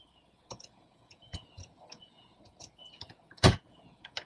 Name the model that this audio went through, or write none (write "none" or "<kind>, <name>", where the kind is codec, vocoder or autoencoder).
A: vocoder, Vocos